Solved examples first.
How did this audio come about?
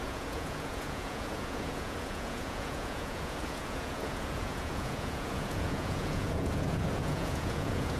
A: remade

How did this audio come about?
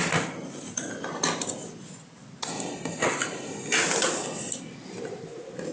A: recorded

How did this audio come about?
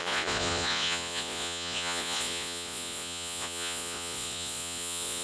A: remade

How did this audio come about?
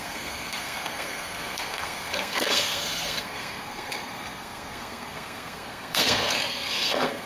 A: remade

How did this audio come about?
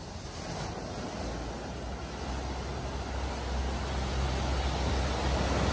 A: recorded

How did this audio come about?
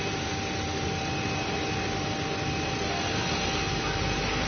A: recorded